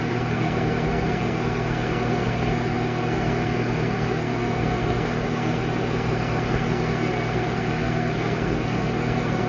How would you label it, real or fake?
fake